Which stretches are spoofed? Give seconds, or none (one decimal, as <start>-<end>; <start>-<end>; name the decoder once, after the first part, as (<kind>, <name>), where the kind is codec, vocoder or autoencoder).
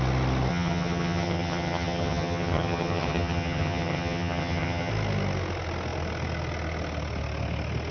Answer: 0.5-4.9 (vocoder, HiFi-GAN)